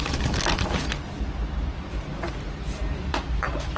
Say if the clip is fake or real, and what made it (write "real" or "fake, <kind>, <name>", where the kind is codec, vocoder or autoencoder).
real